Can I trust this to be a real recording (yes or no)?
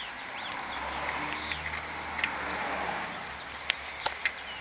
yes